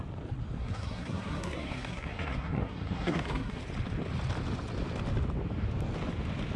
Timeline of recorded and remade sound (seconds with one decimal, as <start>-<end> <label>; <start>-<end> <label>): 0.0-0.6 recorded; 0.6-3.6 remade; 3.6-6.6 recorded